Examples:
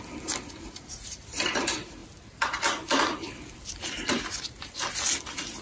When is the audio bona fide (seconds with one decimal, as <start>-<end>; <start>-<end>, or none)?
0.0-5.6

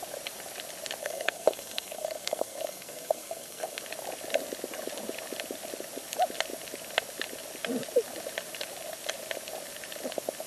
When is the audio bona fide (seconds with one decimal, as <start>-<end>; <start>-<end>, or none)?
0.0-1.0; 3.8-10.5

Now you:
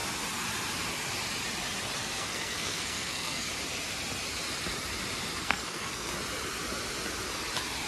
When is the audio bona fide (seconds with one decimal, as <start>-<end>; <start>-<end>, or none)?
0.0-2.0; 3.5-5.4; 6.1-7.9